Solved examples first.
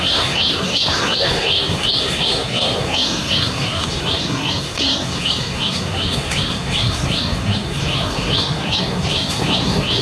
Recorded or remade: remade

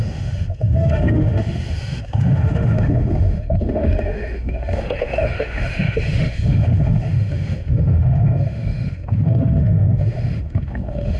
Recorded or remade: remade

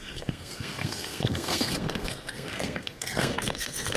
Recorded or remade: remade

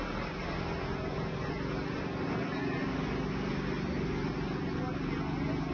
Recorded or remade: recorded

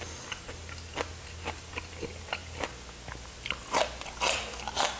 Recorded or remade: recorded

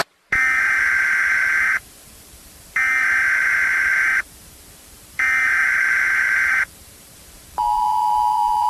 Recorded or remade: remade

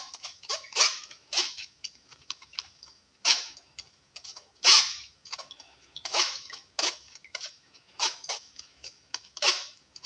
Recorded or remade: remade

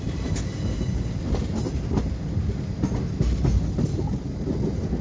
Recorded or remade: recorded